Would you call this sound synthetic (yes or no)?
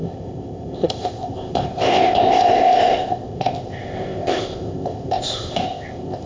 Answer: yes